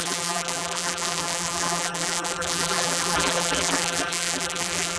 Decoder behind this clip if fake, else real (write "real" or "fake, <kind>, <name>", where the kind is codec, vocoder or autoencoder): fake, vocoder, BigVGAN v2